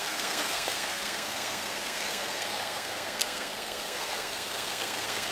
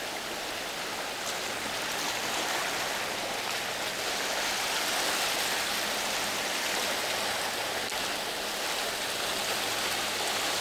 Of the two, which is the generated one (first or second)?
first